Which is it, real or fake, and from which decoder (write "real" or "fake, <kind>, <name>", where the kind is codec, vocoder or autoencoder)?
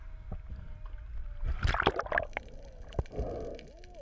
real